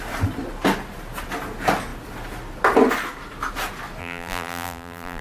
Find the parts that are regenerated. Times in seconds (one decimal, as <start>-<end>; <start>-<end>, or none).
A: 4.0-5.2

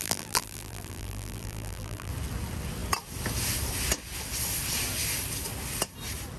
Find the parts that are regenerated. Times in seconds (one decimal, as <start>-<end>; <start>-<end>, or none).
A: 0.0-2.1